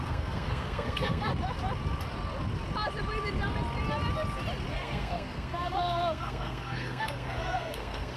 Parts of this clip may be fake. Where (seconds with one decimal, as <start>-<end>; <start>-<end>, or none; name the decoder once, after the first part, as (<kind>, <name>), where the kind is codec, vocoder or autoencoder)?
0.0-1.3 (codec, SNAC); 4.7-8.2